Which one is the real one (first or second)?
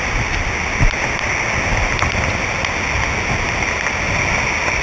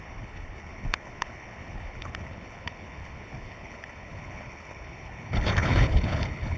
first